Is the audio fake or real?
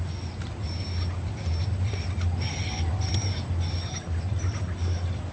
real